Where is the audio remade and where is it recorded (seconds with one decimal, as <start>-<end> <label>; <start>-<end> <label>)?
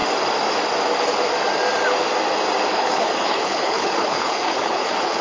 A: 0.0-2.7 recorded; 2.7-5.2 remade